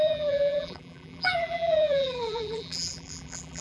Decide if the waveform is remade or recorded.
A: remade